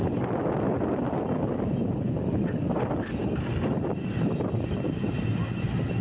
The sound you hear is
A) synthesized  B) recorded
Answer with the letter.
A